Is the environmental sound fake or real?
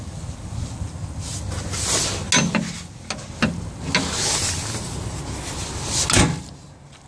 real